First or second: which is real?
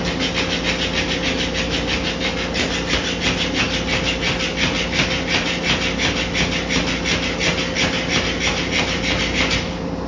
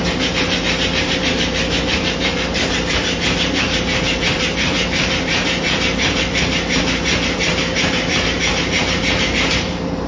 first